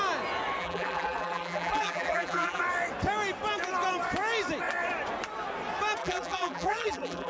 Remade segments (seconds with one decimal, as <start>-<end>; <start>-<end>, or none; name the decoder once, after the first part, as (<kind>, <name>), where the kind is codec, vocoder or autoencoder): 0.6-2.6 (vocoder, BigVGAN v2); 6.0-7.3